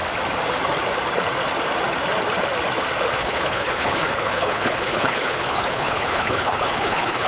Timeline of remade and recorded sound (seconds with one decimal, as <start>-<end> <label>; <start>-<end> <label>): 0.0-3.2 recorded; 3.2-7.3 remade